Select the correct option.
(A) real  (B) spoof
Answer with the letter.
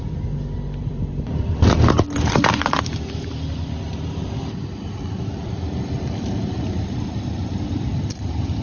B